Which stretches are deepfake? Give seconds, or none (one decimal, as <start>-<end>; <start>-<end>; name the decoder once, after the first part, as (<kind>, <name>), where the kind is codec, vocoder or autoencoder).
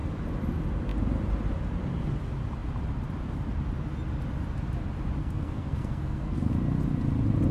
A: 5.2-6.5 (codec, SNAC)